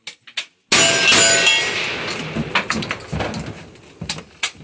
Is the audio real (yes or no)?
yes